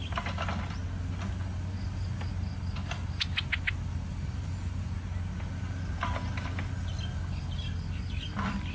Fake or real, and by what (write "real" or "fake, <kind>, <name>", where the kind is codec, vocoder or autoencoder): real